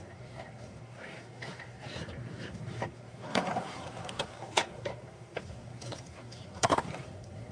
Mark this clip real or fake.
fake